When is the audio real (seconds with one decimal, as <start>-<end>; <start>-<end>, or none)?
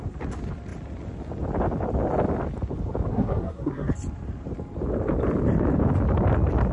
0.0-3.1; 3.9-6.7